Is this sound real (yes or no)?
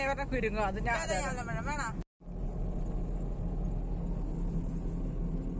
yes